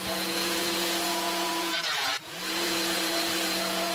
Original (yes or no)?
no